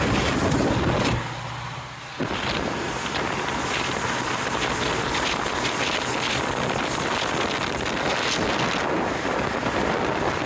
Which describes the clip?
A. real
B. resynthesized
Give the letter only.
A